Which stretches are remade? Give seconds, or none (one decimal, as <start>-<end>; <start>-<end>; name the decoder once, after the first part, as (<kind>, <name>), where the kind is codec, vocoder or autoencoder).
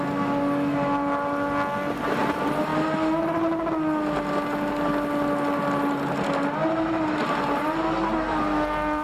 none